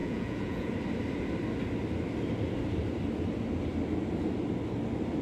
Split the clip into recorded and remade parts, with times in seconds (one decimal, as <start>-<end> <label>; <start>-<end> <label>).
0.0-0.7 remade; 0.7-5.2 recorded